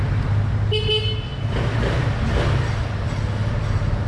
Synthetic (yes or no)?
no